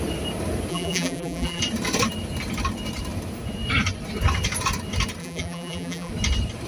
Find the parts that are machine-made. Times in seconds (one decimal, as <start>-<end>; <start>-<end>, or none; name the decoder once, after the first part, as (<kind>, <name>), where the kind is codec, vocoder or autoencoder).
0.7-1.6 (vocoder, BigVGAN v2); 5.2-6.1

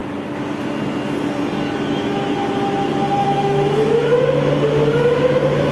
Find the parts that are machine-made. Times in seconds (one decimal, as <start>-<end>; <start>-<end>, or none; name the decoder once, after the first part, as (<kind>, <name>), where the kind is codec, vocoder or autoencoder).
3.2-4.2 (autoencoder, DAC-VAE)

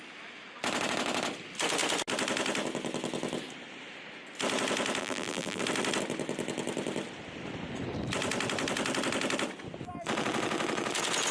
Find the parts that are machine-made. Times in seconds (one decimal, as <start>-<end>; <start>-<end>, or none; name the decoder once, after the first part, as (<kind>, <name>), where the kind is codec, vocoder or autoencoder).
5.0-5.6 (vocoder, BigVGAN v2)